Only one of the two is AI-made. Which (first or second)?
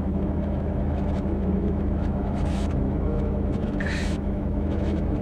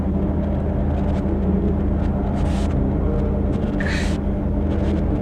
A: first